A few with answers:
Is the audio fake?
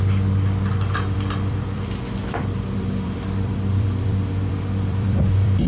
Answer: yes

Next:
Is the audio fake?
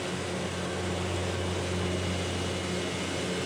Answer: no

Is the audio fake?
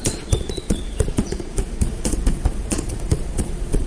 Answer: yes